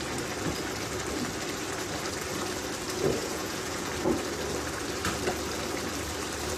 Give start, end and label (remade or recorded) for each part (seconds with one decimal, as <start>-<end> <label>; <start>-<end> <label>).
0.0-3.2 recorded; 3.2-3.9 remade; 3.9-6.6 recorded

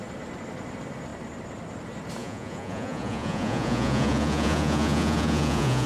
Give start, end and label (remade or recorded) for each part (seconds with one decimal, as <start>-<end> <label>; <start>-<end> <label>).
0.0-2.2 recorded; 2.2-5.9 remade

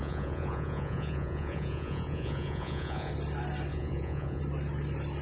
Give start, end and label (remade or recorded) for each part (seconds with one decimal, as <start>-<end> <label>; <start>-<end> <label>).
0.0-3.1 remade; 3.1-3.7 recorded; 3.7-4.4 remade; 4.4-5.2 recorded

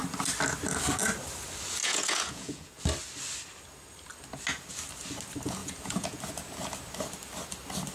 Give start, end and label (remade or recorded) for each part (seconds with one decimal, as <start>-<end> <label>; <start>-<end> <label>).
0.0-1.8 recorded; 1.8-2.8 remade; 2.8-5.6 recorded; 5.6-6.2 remade; 6.2-7.9 recorded